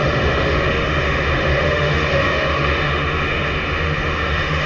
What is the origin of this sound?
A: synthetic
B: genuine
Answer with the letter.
A